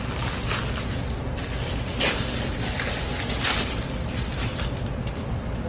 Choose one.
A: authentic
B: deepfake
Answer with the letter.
A